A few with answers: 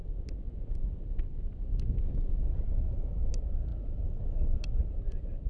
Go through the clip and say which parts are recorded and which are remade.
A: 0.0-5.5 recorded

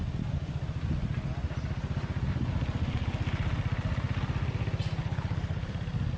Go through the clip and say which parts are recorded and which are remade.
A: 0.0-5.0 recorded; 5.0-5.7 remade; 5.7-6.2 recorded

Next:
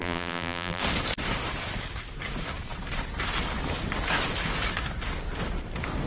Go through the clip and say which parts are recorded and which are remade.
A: 0.0-0.8 remade; 0.8-6.1 recorded